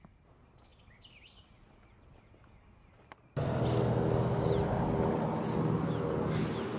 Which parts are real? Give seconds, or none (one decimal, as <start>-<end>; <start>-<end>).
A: 0.0-6.8